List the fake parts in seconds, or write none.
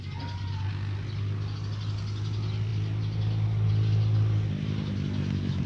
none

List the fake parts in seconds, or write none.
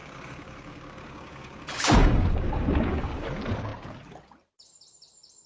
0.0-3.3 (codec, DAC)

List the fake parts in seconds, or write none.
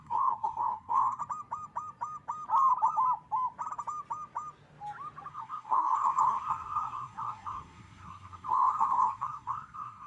0.0-1.2 (codec, SNAC); 5.3-10.1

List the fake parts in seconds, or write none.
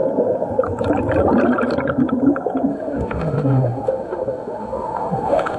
2.7-5.6 (autoencoder, DAC-VAE)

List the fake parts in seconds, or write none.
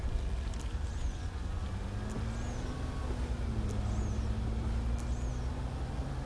0.9-1.6 (vocoder, Vocos)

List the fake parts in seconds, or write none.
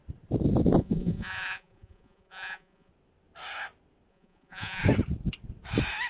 0.8-2.9 (vocoder, Vocos); 4.1-4.8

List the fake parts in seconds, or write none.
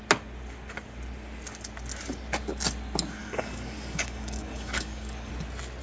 3.2-5.3 (codec, DAC)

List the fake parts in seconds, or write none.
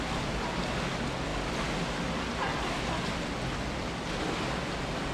none